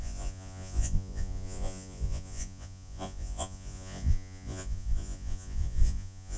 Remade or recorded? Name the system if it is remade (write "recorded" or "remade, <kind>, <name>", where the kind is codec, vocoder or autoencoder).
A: remade, vocoder, Vocos